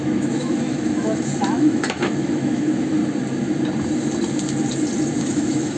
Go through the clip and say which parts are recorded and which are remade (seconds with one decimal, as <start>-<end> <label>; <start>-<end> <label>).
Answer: 0.0-3.0 remade; 3.0-5.2 recorded; 5.2-5.8 remade